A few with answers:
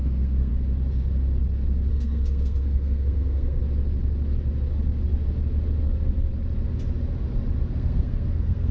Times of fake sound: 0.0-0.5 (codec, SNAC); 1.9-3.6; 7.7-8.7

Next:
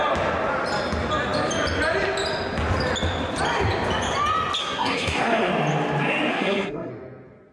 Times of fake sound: 4.6-5.5 (codec, SNAC); 6.3-6.9

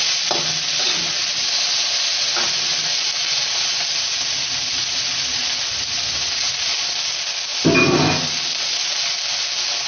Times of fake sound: none

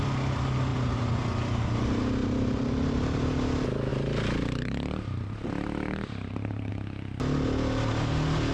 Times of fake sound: 0.7-1.2 (vocoder, BigVGAN v2); 2.2-3.2; 3.9-6.7

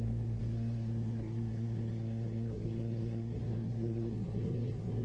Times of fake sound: 0.0-5.0 (codec, SNAC)